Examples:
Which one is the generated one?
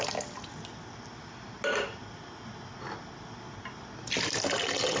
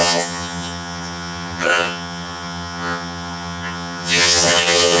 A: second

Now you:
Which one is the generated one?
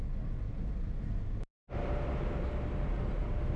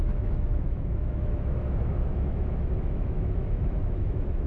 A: second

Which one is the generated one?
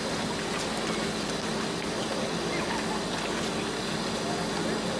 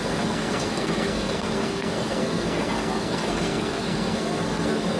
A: second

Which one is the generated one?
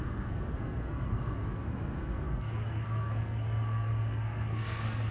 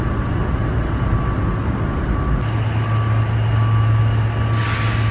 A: first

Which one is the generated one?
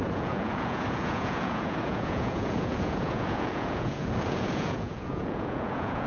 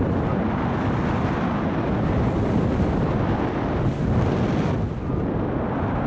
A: first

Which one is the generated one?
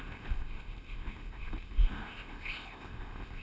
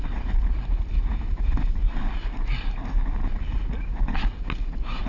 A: first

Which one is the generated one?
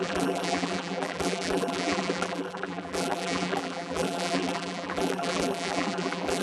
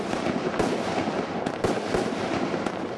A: first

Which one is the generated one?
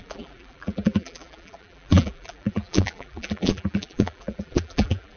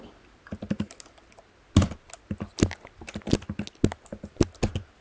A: first